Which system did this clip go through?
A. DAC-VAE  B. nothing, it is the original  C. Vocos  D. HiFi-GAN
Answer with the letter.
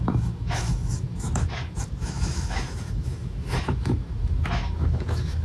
A